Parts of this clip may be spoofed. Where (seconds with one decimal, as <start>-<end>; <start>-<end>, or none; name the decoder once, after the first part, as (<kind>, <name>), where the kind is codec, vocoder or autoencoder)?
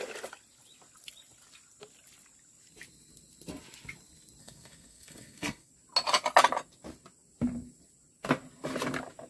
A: 4.4-5.7 (codec, SNAC)